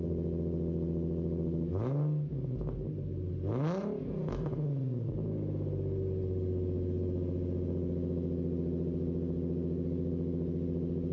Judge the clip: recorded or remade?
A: recorded